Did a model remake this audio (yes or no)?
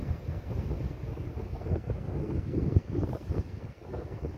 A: yes